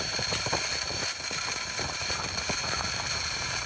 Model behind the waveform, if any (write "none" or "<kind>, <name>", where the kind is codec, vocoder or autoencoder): vocoder, BigVGAN v2